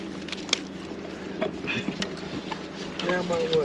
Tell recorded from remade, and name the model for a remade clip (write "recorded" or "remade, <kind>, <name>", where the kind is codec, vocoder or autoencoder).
recorded